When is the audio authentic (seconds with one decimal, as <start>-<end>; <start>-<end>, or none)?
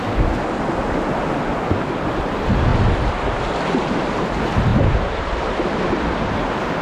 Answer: 0.0-6.8